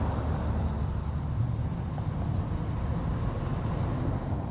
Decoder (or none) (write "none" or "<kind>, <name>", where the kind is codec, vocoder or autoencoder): none